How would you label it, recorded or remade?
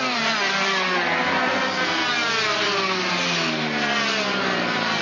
recorded